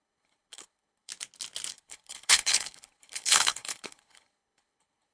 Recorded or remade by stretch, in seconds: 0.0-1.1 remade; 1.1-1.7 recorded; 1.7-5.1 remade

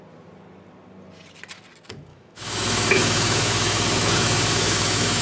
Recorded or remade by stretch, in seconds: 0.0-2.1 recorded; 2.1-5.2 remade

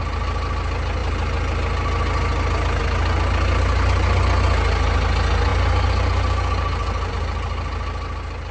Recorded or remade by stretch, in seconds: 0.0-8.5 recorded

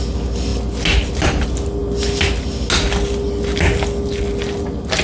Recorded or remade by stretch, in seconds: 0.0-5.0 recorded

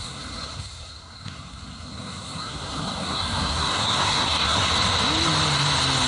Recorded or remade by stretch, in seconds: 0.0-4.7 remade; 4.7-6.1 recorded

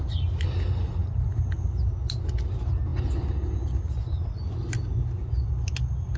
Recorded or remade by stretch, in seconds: 0.0-6.2 recorded

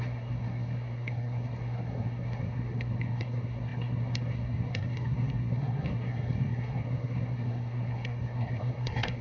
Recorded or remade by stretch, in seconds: 0.0-9.2 remade

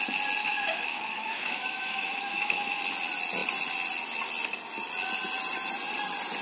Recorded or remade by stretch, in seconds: 0.0-0.4 recorded; 0.4-2.8 remade; 2.8-6.4 recorded